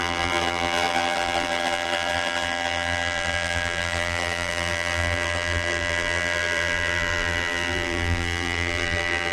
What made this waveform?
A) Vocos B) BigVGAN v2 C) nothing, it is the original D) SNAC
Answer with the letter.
B